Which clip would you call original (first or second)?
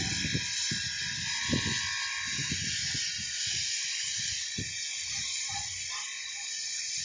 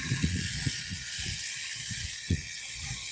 first